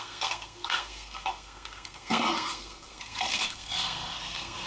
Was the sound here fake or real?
fake